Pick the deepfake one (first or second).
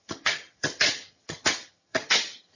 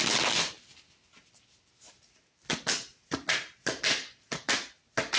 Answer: first